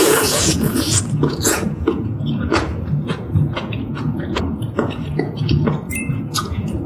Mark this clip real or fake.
fake